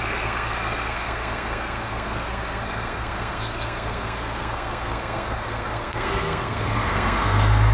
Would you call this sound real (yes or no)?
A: no